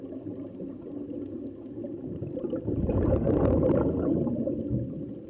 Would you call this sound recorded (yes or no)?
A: yes